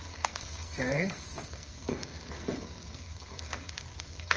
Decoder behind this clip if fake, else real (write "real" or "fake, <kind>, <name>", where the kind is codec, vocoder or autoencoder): fake, codec, SNAC